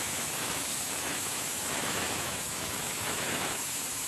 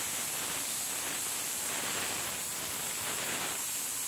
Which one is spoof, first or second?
first